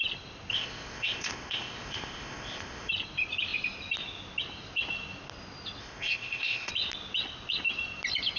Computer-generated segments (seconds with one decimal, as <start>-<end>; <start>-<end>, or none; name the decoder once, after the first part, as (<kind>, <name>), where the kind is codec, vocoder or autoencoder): 0.5-2.9 (codec, ZipCodec); 5.8-6.7